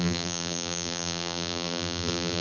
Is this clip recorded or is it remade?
remade